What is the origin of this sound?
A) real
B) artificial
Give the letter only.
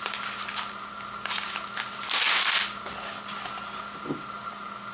A